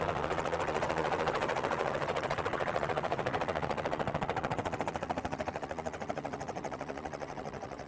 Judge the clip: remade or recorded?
remade